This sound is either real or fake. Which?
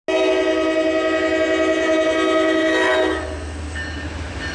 real